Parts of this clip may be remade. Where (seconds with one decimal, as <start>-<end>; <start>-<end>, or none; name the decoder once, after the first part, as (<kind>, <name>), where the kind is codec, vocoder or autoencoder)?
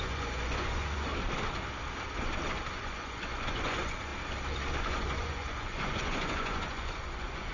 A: 0.0-1.1 (vocoder, Vocos); 2.7-4.1; 4.8-7.5